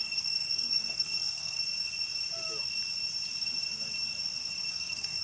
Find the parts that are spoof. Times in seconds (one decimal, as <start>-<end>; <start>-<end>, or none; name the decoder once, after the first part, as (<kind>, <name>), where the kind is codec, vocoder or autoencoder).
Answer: 0.0-1.6 (codec, SNAC); 4.7-5.2